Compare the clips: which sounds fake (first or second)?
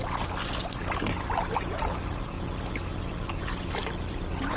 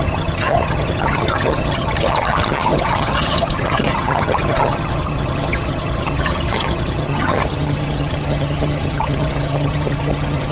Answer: second